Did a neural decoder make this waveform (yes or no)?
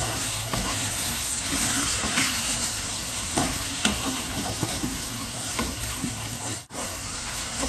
yes